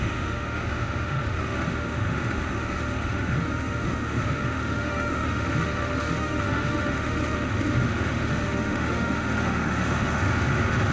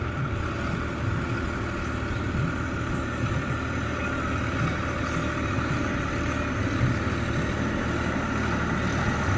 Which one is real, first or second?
second